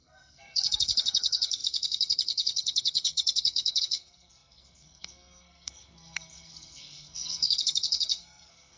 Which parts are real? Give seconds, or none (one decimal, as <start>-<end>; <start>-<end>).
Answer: none

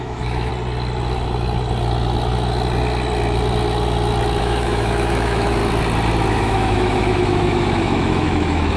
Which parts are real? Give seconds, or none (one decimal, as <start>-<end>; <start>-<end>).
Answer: 0.5-4.4; 5.6-6.3

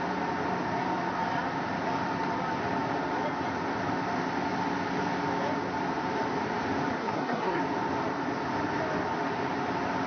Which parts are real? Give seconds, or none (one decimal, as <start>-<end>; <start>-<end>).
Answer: 0.0-7.0; 7.6-10.1

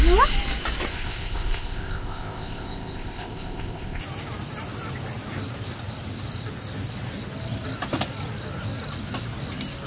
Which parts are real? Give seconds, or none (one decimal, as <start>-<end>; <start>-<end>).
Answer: 0.0-0.9; 4.0-9.9